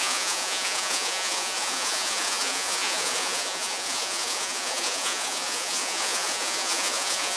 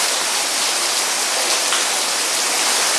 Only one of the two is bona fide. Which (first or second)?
second